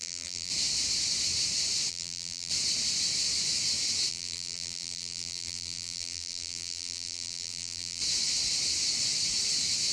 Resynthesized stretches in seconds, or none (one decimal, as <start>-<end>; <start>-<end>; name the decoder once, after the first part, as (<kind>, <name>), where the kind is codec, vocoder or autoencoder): 0.0-0.5 (vocoder, BigVGAN v2); 1.9-2.5; 4.1-8.0